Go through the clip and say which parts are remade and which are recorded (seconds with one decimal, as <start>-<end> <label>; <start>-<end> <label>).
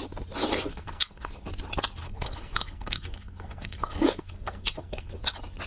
0.0-0.7 recorded; 0.7-1.3 remade; 1.3-2.0 recorded; 2.0-5.2 remade; 5.2-5.7 recorded